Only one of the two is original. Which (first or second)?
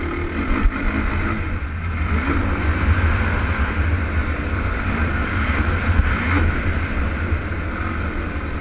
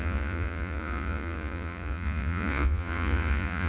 first